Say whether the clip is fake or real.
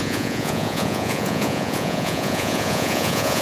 fake